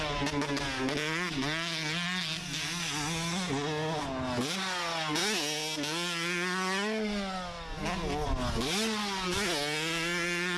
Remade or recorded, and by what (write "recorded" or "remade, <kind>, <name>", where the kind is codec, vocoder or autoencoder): recorded